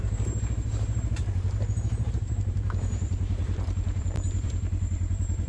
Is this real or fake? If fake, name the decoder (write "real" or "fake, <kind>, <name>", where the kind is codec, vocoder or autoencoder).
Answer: fake, vocoder, BigVGAN v2